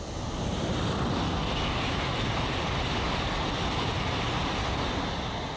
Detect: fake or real real